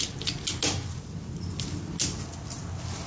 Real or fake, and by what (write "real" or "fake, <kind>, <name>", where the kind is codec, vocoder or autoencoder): real